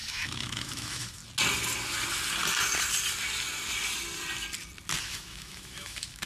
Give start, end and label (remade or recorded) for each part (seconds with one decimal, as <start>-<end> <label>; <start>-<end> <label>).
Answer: 0.0-1.2 remade; 1.2-5.0 recorded; 5.0-6.3 remade